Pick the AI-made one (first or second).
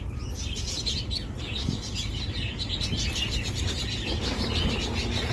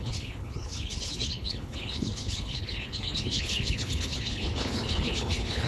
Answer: second